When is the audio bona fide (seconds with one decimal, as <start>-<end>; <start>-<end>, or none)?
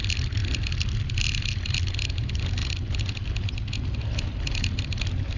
0.0-5.4